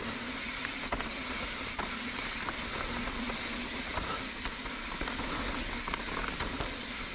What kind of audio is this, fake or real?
real